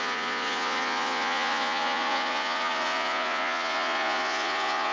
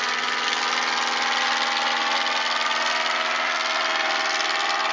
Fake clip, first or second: first